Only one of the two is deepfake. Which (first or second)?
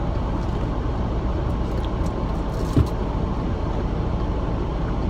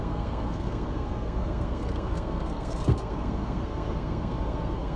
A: second